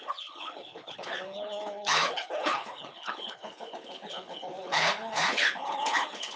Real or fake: fake